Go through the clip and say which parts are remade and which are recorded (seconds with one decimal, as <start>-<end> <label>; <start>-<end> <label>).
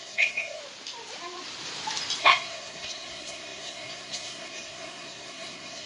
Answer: 0.0-0.6 remade; 0.6-2.2 recorded; 2.2-5.9 remade